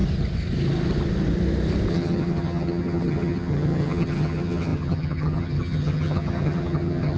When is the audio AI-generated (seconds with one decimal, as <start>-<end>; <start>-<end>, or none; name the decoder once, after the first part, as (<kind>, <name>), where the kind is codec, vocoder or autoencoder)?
1.9-7.2 (vocoder, HiFi-GAN)